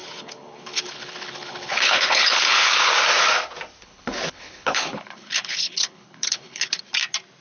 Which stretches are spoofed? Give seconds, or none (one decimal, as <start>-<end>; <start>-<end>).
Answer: 0.0-2.9; 3.8-6.8